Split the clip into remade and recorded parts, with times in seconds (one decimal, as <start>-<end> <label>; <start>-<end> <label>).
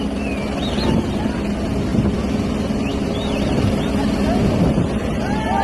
0.0-5.6 recorded